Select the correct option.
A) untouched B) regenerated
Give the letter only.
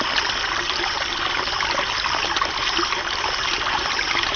A